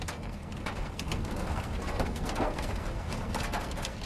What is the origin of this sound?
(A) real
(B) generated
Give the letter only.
B